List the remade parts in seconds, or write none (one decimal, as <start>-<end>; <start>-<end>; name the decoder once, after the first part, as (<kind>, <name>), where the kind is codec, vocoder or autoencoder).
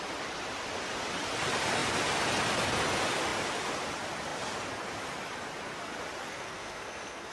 6.3-7.3 (codec, SNAC)